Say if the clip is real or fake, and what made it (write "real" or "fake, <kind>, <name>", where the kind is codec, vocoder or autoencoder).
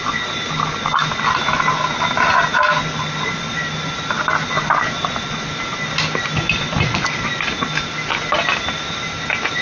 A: real